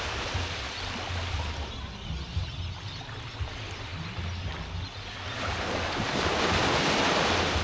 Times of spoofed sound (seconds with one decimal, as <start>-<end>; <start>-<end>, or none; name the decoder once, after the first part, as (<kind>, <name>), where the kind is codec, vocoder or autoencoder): none

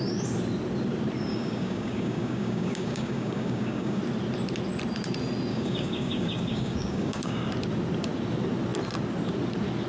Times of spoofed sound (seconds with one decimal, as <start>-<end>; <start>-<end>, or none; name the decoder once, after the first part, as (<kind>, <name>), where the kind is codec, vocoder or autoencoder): 1.3-4.0 (codec, DAC); 5.5-7.5

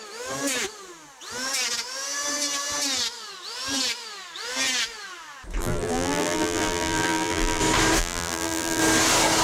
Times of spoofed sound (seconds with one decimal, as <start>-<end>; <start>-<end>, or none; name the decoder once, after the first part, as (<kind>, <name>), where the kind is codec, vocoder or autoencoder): 5.6-7.6 (vocoder, BigVGAN v2); 8.0-8.8

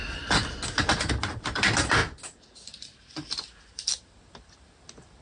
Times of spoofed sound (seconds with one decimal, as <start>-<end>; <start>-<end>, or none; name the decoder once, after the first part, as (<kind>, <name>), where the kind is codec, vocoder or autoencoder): none